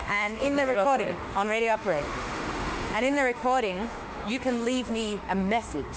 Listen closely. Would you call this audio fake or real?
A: fake